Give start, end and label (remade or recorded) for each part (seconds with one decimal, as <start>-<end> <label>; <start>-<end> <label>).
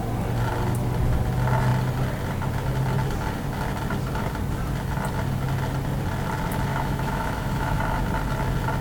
0.0-6.7 recorded; 6.7-7.8 remade; 7.8-8.8 recorded